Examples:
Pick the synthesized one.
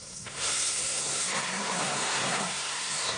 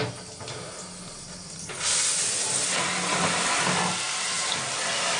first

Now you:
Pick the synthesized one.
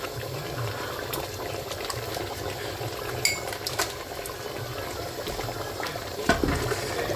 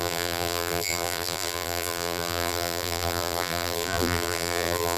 second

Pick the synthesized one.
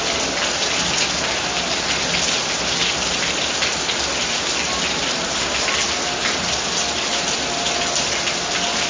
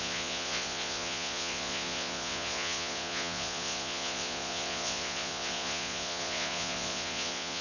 second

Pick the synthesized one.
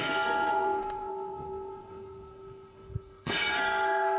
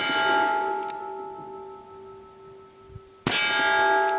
first